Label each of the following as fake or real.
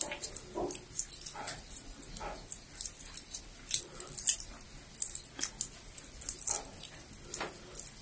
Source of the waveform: real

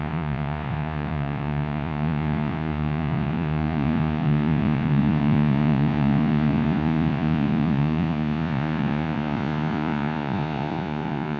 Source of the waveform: fake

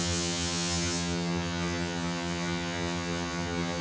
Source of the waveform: fake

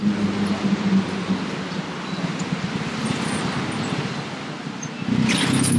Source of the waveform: real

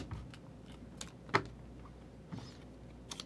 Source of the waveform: real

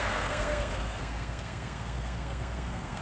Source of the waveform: fake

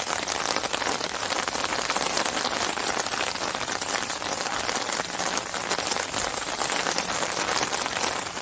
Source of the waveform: real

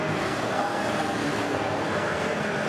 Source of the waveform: fake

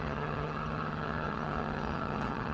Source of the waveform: fake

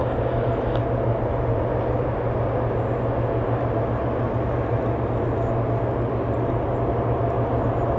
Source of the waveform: real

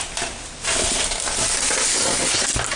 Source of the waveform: real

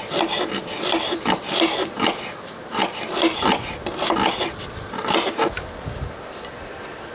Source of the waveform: real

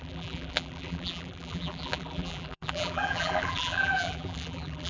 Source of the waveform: fake